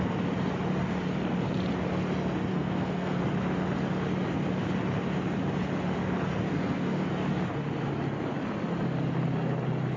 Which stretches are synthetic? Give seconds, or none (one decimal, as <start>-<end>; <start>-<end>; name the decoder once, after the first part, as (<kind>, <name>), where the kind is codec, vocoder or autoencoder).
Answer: 2.5-3.2 (codec, SNAC); 6.5-7.1